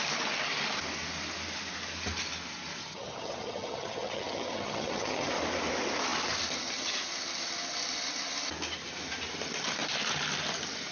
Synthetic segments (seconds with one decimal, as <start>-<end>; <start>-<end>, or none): 2.8-5.3